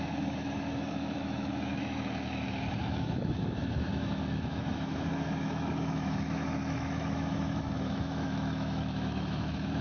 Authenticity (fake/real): fake